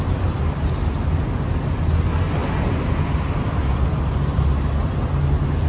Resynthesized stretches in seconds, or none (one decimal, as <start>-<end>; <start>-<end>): none